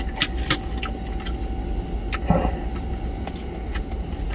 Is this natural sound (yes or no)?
yes